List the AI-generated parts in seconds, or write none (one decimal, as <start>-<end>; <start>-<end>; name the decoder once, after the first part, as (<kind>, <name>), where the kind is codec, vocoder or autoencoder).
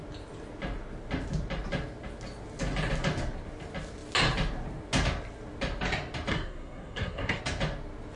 6.3-7.4 (codec, SNAC)